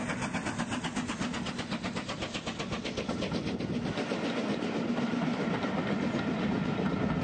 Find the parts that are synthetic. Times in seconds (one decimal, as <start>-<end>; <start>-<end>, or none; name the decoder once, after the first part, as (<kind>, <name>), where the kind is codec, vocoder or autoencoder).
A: none